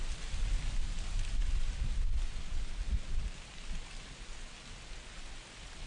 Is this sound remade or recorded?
recorded